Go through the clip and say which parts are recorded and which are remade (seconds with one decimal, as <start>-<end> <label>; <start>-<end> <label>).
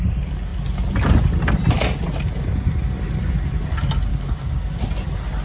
0.0-4.1 recorded; 4.1-4.8 remade; 4.8-5.4 recorded